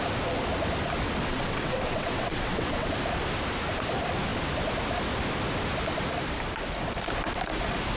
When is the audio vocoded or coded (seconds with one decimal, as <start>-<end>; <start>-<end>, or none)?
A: 1.3-2.9